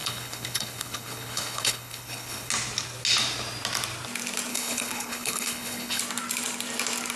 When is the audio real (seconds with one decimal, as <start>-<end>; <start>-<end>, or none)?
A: 2.5-4.5; 6.0-7.2

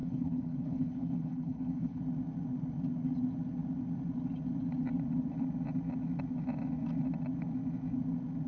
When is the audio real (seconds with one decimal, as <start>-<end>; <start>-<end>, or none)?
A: 2.0-8.5

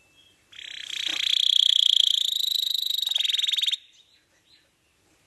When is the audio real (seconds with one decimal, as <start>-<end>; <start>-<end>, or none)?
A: 0.0-5.3